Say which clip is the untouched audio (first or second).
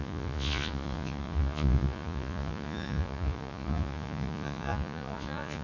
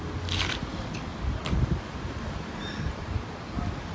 second